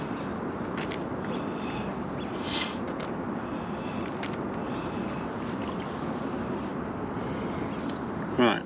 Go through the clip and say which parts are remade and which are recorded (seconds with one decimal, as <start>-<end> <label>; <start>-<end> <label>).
0.0-8.7 recorded